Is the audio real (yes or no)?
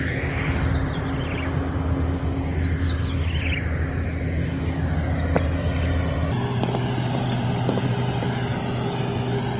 yes